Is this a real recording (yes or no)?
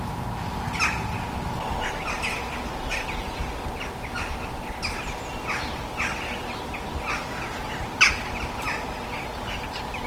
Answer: yes